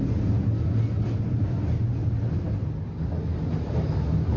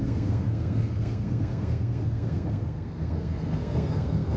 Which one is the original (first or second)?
first